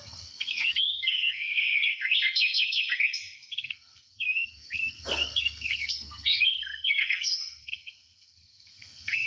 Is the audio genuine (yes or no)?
no